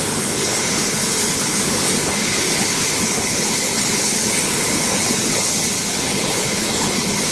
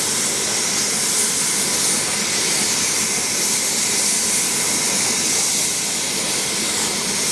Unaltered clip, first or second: second